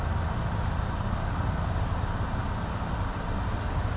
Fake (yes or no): no